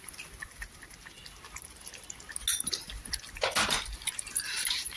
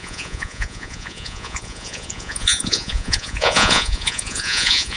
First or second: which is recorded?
first